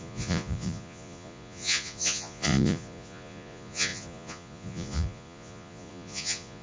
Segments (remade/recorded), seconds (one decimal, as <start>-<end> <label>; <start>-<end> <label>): 0.0-6.6 remade